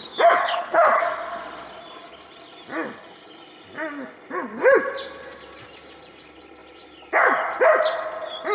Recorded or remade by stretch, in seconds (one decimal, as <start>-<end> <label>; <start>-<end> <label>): 0.0-0.4 recorded; 0.4-1.0 remade; 1.0-8.5 recorded